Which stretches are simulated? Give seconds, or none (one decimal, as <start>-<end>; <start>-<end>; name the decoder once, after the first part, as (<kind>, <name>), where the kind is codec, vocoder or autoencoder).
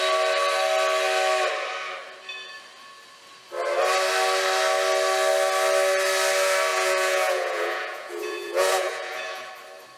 6.7-9.5 (vocoder, Vocos)